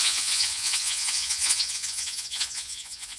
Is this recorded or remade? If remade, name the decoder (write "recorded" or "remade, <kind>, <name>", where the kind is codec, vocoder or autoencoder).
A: remade, vocoder, Vocos